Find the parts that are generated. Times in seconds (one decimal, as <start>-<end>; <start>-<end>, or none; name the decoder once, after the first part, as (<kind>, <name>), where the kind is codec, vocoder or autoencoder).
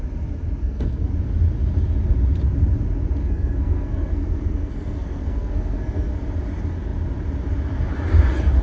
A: 0.6-1.1 (codec, SNAC); 3.2-6.1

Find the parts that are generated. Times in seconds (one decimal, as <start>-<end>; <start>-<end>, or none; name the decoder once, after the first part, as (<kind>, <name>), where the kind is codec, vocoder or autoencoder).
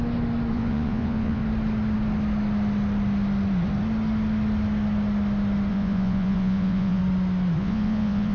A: 0.5-1.4 (vocoder, Vocos); 5.7-7.0; 7.6-8.3